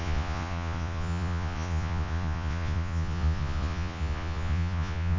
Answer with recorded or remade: remade